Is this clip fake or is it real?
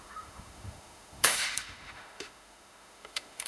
fake